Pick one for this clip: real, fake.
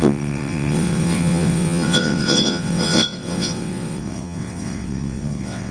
fake